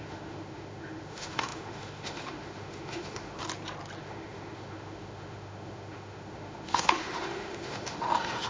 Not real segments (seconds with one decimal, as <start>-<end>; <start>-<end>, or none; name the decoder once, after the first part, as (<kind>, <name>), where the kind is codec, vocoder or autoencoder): 0.0-3.4 (autoencoder, DAC-VAE); 4.0-8.5